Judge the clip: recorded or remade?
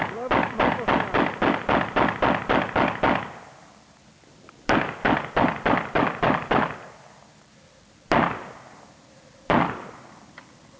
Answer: recorded